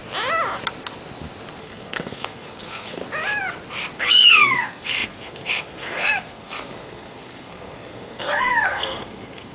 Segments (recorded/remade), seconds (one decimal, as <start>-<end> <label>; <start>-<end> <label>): 0.0-1.6 recorded; 1.6-3.0 remade; 3.0-4.0 recorded; 4.0-9.5 remade